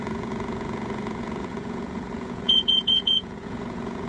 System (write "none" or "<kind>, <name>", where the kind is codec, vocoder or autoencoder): vocoder, Vocos